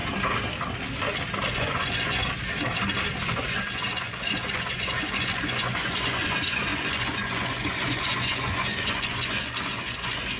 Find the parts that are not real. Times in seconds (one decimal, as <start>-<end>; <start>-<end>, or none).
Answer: 1.5-2.2; 3.2-10.4